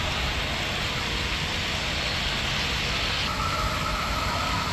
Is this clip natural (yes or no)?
yes